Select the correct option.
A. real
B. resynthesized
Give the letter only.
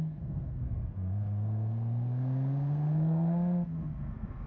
B